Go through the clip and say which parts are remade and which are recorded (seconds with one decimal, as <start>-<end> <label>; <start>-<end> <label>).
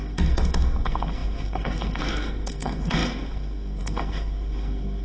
0.0-5.0 remade